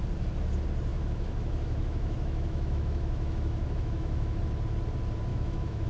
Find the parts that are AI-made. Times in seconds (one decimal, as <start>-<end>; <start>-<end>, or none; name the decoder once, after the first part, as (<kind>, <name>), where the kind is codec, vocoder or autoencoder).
0.9-4.4 (autoencoder, DAC-VAE); 5.3-5.9